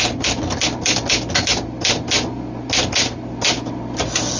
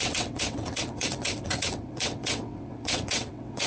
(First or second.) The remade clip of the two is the second